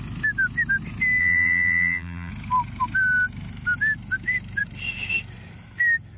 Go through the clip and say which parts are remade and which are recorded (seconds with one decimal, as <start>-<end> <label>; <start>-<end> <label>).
0.0-1.2 recorded; 1.2-2.3 remade; 2.3-6.2 recorded